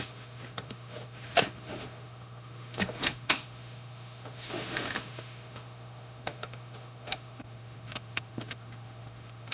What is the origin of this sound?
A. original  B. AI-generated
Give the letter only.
B